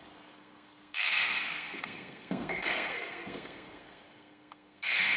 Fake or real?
fake